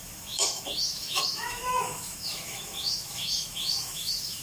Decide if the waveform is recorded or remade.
remade